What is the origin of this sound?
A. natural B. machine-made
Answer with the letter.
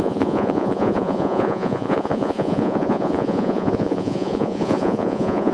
B